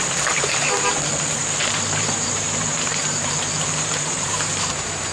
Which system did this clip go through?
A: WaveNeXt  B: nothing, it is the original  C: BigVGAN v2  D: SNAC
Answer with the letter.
C